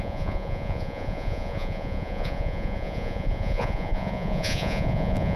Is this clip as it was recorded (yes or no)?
no